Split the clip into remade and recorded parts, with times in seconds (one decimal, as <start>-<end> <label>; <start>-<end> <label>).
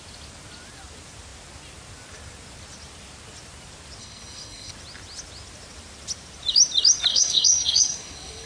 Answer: 0.0-4.0 recorded; 4.0-4.7 remade; 4.7-7.1 recorded; 7.1-8.5 remade